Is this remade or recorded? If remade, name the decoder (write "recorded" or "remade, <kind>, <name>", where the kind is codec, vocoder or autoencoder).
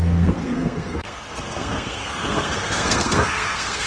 remade, codec, SNAC